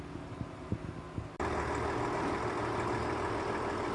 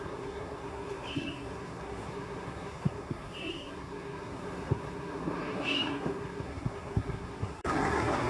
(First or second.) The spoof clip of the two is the second